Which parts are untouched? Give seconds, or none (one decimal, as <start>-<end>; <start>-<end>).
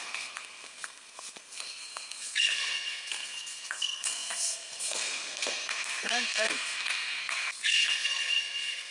none